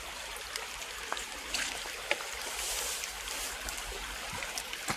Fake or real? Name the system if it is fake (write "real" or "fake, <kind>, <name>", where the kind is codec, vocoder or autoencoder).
real